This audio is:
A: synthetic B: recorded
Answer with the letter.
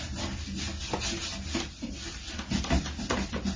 B